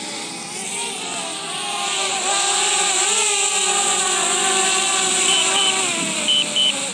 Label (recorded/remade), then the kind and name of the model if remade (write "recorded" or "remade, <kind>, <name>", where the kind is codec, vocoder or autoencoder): recorded